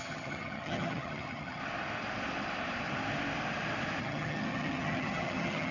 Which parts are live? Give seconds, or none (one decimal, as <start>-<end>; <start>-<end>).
1.6-4.0